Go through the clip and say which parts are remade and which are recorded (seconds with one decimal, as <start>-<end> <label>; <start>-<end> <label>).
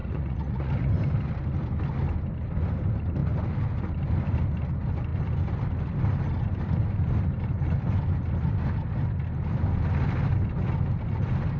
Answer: 0.0-0.9 remade; 0.9-11.6 recorded